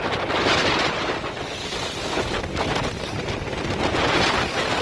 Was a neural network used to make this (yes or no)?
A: no